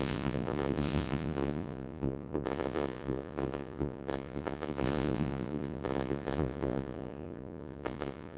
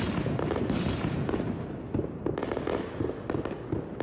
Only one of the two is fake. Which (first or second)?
first